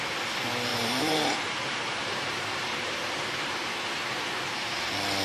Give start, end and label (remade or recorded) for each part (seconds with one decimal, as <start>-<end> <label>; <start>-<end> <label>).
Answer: 0.0-0.7 recorded; 0.7-3.5 remade; 3.5-5.2 recorded